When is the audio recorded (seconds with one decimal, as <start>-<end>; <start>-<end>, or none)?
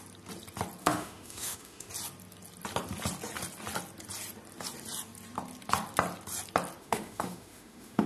0.0-0.8; 1.9-6.8